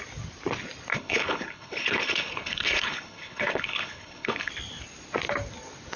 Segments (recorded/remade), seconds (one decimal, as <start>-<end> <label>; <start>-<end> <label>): 0.0-0.9 recorded; 0.9-4.5 remade; 4.5-6.0 recorded